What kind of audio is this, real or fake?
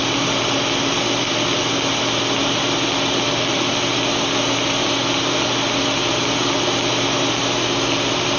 real